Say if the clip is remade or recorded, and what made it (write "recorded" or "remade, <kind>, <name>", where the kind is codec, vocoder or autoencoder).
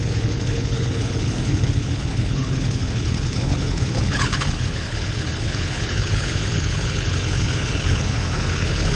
remade, codec, HILCodec